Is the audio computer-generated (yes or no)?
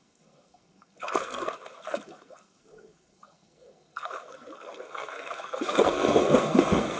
yes